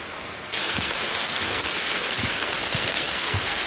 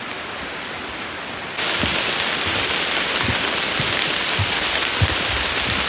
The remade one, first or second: first